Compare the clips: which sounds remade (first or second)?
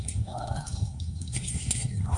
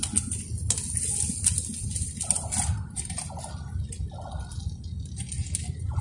first